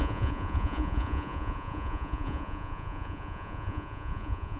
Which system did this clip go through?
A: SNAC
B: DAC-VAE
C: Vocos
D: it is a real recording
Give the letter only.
C